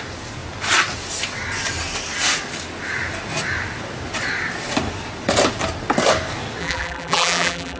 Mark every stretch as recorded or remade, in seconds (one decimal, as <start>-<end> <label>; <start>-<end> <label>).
0.0-6.6 recorded; 6.6-7.8 remade